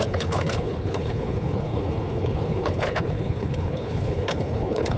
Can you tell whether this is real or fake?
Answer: fake